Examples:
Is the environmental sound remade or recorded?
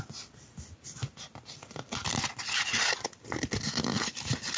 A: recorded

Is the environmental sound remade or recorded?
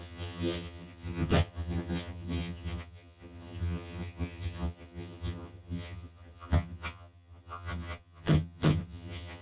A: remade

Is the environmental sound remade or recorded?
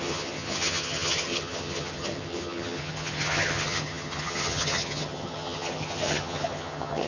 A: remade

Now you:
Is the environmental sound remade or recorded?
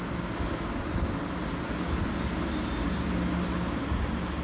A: recorded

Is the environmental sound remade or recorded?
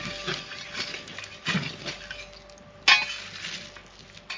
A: recorded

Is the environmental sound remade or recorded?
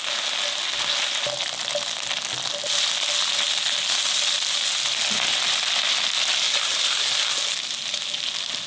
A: recorded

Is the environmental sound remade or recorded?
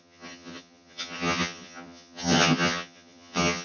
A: remade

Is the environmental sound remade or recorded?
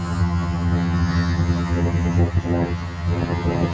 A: remade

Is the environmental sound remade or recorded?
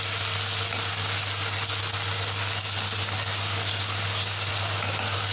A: recorded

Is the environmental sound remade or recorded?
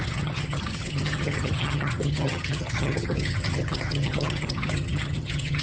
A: remade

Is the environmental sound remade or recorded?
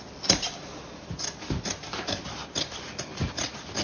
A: recorded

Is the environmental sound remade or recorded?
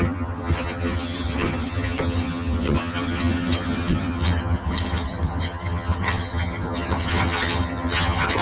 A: remade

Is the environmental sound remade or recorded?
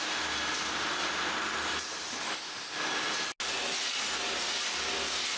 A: recorded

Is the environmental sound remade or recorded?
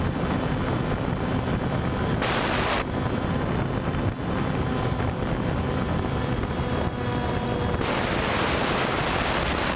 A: recorded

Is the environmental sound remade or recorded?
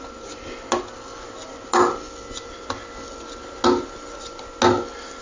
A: recorded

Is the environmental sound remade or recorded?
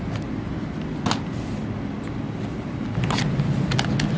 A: recorded